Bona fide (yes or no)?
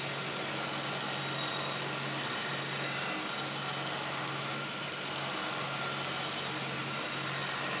yes